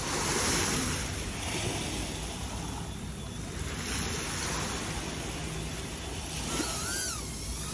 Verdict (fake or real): real